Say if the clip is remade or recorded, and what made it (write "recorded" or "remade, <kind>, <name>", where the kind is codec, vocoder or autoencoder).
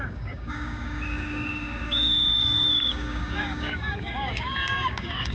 remade, codec, DAC